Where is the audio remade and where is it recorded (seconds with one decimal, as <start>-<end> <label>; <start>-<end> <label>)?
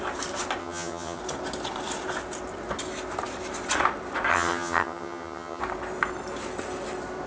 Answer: 0.0-0.6 recorded; 0.6-1.2 remade; 1.2-4.3 recorded; 4.3-5.6 remade; 5.6-7.3 recorded